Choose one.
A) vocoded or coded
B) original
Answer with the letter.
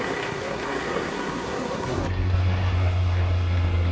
A